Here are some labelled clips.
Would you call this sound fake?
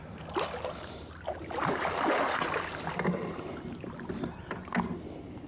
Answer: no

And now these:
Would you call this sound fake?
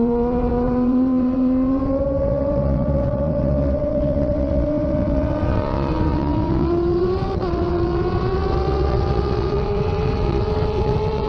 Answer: yes